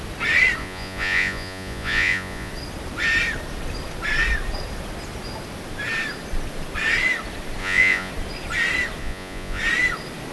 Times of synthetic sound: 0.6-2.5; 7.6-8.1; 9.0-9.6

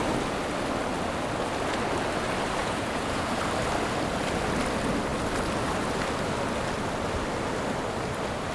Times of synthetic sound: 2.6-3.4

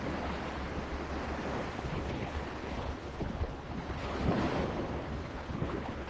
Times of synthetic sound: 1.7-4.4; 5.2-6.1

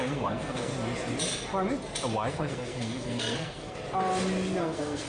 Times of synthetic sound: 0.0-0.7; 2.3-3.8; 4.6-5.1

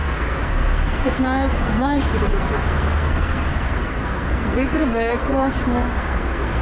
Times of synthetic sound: 0.0-6.6

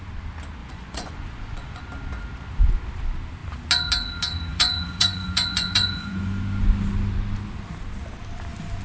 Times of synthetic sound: 0.6-1.8; 4.5-6.4